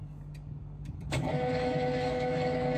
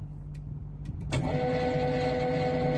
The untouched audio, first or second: second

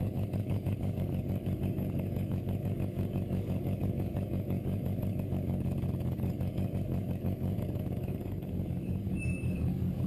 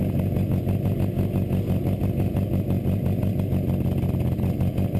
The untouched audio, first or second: second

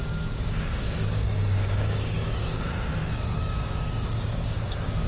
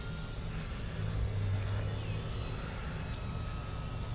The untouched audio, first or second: second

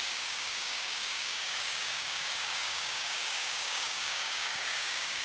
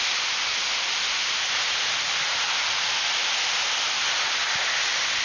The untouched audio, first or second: second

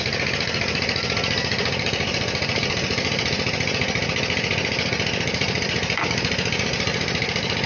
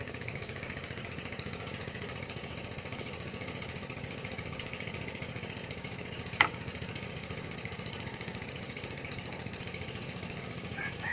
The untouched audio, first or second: first